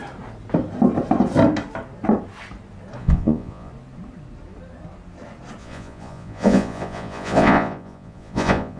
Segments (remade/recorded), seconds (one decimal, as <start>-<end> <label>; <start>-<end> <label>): 0.0-3.0 recorded; 3.0-3.7 remade; 3.7-5.6 recorded; 5.6-8.8 remade